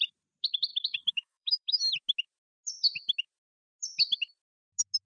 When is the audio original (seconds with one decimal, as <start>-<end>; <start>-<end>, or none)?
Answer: 0.0-0.7; 1.9-5.1